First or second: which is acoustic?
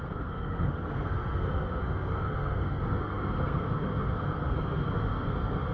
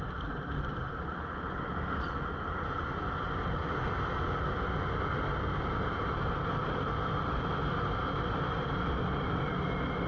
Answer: second